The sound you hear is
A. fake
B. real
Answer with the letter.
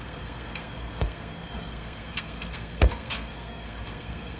A